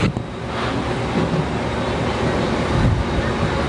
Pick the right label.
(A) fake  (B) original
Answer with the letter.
B